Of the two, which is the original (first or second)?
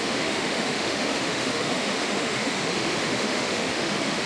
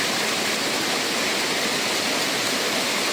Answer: second